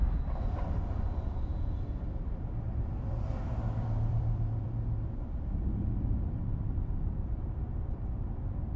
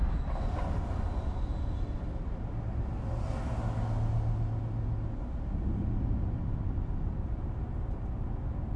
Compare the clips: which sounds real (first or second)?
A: second